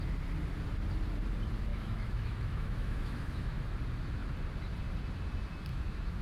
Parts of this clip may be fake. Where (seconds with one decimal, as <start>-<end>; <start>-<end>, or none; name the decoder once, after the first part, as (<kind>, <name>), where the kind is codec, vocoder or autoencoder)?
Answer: 1.7-3.6 (autoencoder, DAC-VAE); 5.7-6.2